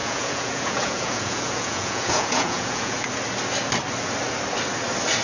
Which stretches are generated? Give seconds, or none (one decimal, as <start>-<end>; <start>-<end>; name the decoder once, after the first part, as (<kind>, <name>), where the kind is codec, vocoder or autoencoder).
0.0-3.1 (vocoder, Vocos)